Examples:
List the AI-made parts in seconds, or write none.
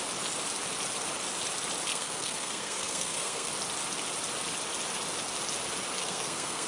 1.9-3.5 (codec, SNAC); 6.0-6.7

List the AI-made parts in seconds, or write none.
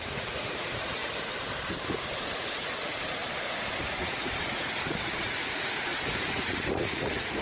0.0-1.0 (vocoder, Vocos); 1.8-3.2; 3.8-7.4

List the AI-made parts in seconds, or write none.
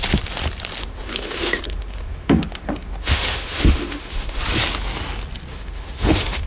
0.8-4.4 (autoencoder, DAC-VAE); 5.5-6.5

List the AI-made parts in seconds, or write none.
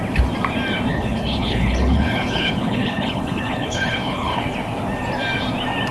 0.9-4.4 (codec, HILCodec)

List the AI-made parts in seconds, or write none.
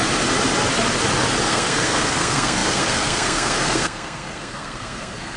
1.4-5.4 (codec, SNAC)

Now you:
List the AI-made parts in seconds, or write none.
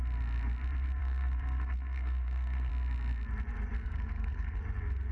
1.0-2.7 (codec, SNAC); 3.8-4.6